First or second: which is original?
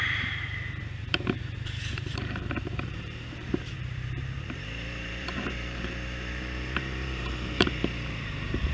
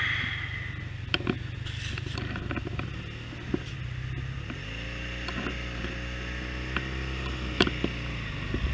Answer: second